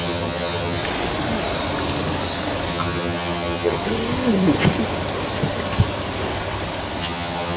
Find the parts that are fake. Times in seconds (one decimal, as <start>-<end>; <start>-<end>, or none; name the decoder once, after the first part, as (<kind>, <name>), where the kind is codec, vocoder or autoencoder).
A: 0.0-0.8 (vocoder, HiFi-GAN); 2.7-3.8; 7.0-7.6